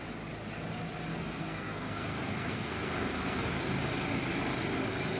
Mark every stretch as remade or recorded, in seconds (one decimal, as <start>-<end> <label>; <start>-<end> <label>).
0.0-1.1 recorded; 1.1-3.5 remade; 3.5-5.2 recorded

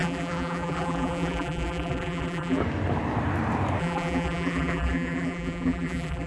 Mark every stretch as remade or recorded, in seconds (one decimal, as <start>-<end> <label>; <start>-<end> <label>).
0.0-2.6 remade; 2.6-3.8 recorded; 3.8-6.3 remade

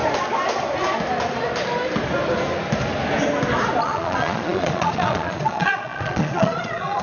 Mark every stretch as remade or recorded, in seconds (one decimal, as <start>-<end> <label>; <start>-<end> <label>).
0.0-3.8 recorded; 3.8-7.0 remade

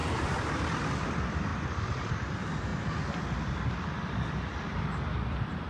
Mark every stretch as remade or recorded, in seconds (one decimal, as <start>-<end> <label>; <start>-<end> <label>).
0.0-1.5 recorded; 1.5-2.1 remade; 2.1-5.7 recorded

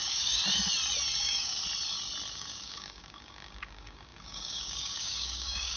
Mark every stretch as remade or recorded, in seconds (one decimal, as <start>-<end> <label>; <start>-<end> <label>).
0.0-0.4 remade; 0.4-1.2 recorded; 1.2-1.6 remade; 1.6-2.3 recorded; 2.3-5.8 remade

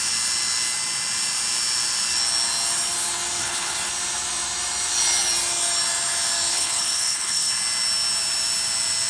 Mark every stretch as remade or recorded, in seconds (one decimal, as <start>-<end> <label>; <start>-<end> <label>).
0.0-3.4 recorded; 3.4-3.9 remade; 3.9-6.5 recorded; 6.5-7.5 remade; 7.5-9.1 recorded

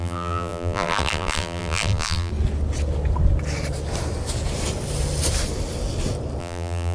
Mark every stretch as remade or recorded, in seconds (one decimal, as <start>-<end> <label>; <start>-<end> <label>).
0.0-2.3 remade; 2.3-6.4 recorded; 6.4-6.9 remade